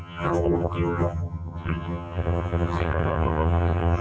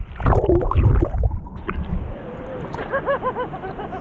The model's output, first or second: first